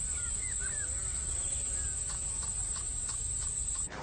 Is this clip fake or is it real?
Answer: real